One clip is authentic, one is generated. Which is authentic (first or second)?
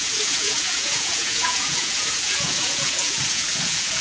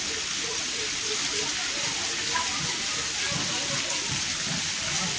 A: second